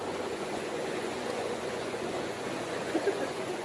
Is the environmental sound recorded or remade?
remade